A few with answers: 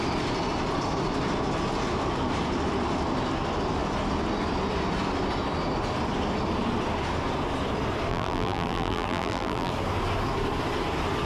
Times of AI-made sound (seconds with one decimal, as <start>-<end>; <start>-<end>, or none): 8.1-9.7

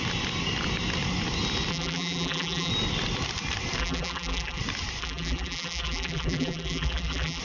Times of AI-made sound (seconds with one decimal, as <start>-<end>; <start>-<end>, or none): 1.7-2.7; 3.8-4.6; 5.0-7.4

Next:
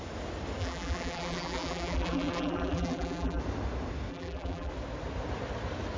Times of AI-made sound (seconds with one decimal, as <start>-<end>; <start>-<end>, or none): 0.6-3.4; 4.1-4.7